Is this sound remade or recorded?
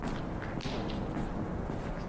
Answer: recorded